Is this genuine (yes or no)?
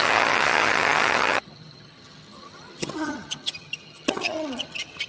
no